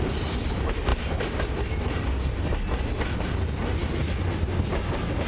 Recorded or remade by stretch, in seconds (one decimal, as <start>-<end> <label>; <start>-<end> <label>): 0.0-5.3 recorded